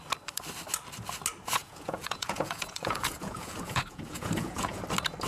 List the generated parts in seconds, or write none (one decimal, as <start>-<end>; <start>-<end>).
1.6-4.8